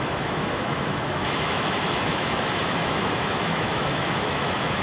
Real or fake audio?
fake